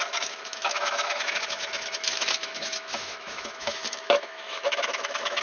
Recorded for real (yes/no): no